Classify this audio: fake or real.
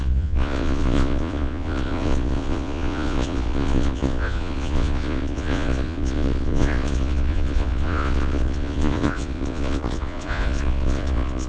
fake